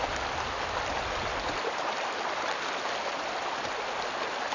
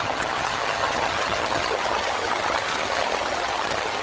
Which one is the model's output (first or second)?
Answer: second